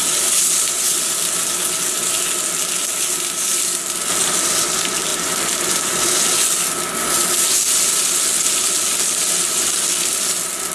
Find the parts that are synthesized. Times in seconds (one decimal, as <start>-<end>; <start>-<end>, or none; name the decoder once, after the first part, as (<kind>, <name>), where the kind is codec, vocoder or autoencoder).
5.1-6.2 (vocoder, BigVGAN v2)